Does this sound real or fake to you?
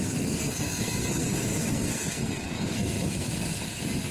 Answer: fake